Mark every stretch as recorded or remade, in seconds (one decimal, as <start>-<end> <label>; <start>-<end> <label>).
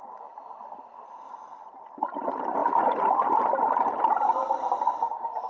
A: 0.0-5.5 recorded